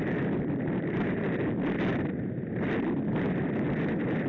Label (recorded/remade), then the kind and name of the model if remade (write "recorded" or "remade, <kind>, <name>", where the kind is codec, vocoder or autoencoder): recorded